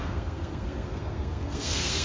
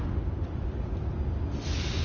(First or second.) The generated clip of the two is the first